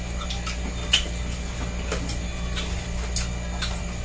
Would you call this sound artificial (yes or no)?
no